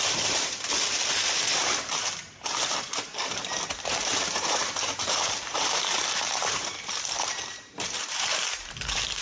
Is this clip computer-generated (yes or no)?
yes